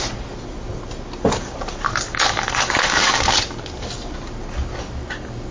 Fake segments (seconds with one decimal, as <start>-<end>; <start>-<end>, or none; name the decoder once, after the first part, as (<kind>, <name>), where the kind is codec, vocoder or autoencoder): 1.9-3.3 (codec, DAC)